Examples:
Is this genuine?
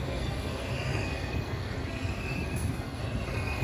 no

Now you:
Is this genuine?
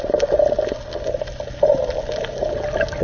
yes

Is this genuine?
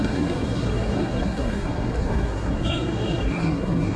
no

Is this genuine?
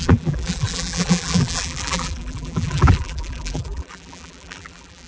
no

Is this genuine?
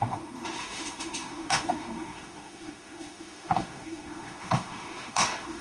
no